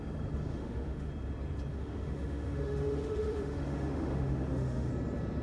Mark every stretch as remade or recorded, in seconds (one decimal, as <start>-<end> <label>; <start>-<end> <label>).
0.0-0.5 recorded; 0.5-1.1 remade; 1.1-1.7 recorded; 1.7-4.9 remade; 4.9-5.4 recorded